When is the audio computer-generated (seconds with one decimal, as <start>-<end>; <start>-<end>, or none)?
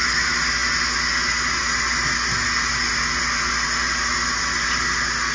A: none